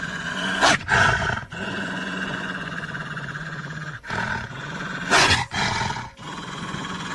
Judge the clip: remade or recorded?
remade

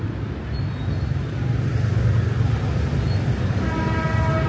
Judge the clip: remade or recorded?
recorded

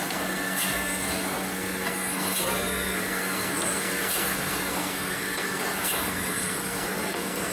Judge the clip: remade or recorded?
remade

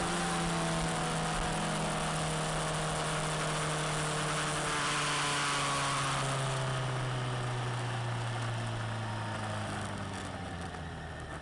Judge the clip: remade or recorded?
recorded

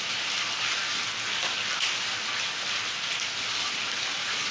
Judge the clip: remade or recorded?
recorded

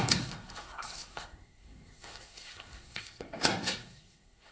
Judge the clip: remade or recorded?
remade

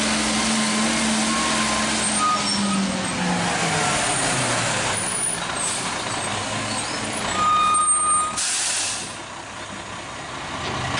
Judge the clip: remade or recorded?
recorded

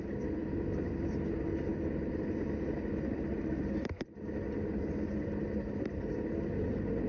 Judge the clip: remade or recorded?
recorded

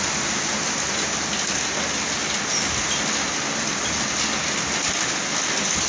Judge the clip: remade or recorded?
recorded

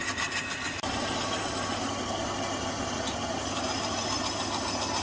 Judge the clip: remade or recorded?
recorded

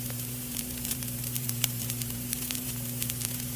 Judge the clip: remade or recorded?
remade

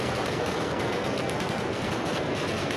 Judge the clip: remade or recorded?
remade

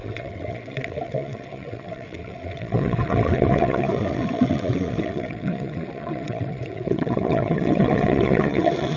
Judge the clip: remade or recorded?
remade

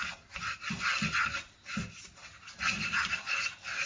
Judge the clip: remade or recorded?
recorded